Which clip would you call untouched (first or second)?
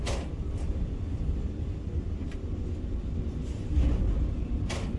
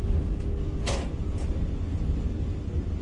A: second